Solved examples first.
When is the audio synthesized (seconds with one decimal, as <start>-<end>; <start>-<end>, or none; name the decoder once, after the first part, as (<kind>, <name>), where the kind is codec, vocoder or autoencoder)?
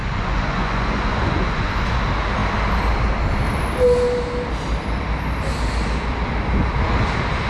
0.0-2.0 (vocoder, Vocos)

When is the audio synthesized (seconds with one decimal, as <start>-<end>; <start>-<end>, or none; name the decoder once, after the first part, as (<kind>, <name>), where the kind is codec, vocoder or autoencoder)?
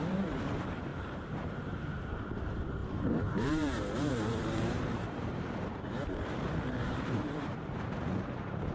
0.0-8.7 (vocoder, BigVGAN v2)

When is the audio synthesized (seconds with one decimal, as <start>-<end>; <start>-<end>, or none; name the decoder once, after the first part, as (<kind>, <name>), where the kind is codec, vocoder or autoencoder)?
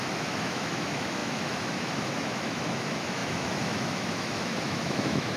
0.0-5.4 (autoencoder, DAC-VAE)